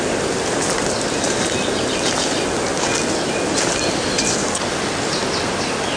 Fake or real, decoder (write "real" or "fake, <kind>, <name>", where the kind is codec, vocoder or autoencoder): real